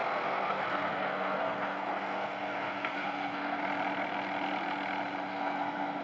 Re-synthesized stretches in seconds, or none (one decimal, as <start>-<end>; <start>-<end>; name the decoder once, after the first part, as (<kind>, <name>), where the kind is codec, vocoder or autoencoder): 0.0-3.6 (codec, SNAC); 5.3-6.0